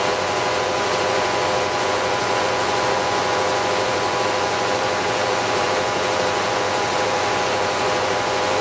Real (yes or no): no